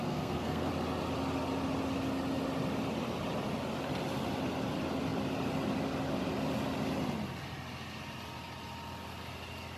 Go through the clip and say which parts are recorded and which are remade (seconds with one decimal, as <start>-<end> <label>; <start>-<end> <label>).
0.0-0.7 remade; 0.7-9.8 recorded